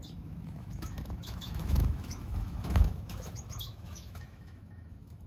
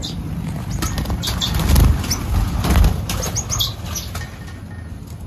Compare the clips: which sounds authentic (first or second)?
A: second